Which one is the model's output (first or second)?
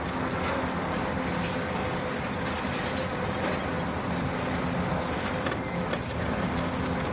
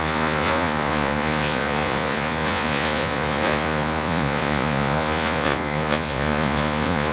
second